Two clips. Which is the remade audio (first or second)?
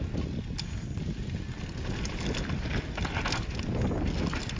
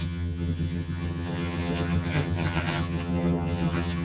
second